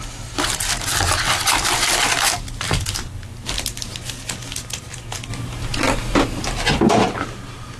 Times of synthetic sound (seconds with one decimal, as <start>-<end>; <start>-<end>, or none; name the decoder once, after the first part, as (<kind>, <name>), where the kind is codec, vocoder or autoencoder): none

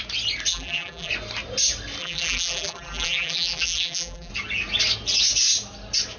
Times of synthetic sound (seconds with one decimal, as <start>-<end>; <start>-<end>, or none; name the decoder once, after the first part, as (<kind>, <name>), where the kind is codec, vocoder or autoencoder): 0.5-1.1 (vocoder, BigVGAN v2); 2.0-4.3

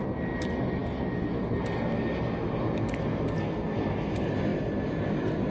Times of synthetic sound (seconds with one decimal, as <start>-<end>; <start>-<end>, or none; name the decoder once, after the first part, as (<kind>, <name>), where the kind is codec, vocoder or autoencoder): none

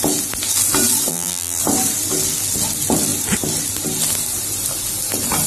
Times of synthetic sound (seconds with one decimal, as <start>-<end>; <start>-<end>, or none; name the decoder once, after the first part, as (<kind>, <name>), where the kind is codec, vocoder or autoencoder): 1.1-1.6 (vocoder, BigVGAN v2)

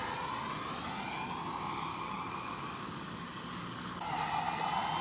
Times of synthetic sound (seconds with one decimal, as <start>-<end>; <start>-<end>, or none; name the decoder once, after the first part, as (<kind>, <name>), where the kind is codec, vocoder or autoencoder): 1.9-4.2 (codec, DAC)

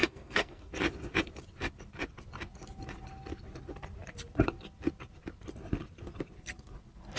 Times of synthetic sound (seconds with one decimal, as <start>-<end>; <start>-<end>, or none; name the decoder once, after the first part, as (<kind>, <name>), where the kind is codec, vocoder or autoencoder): 0.0-0.7 (codec, SNAC)

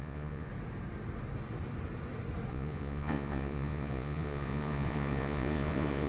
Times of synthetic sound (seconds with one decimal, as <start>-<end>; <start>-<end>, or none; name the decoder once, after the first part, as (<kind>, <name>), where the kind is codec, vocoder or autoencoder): 0.0-0.5 (vocoder, Vocos); 2.5-6.1

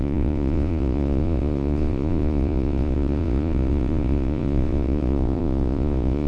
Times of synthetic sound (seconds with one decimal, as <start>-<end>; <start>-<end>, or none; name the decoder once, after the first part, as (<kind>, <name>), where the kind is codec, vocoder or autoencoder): 0.0-6.3 (vocoder, Vocos)